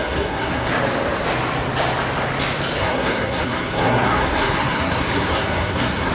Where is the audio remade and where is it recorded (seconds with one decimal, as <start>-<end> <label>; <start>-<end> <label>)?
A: 0.0-0.7 remade; 0.7-2.8 recorded; 2.8-6.1 remade

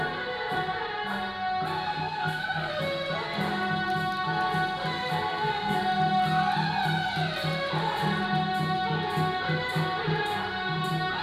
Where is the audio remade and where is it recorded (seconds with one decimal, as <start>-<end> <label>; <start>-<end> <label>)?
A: 0.0-1.9 recorded; 1.9-2.7 remade; 2.7-5.3 recorded; 5.3-5.8 remade; 5.8-11.2 recorded

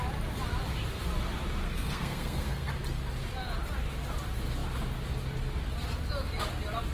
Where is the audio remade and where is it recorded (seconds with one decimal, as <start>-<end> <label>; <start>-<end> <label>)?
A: 0.0-1.6 recorded; 1.6-2.7 remade; 2.7-6.9 recorded

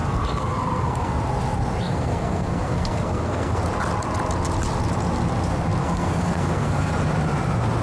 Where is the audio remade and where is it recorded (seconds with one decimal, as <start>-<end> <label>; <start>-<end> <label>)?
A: 0.0-1.2 remade; 1.2-1.8 recorded; 1.8-3.6 remade; 3.6-5.8 recorded; 5.8-6.9 remade; 6.9-7.8 recorded